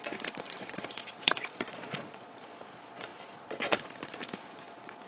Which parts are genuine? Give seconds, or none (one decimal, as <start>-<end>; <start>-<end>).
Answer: none